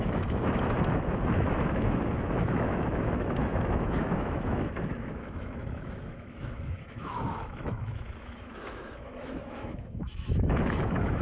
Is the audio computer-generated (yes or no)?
yes